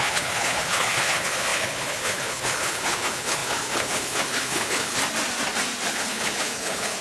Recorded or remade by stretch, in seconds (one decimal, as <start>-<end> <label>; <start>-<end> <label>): 0.0-5.0 remade; 5.0-5.9 recorded; 5.9-7.0 remade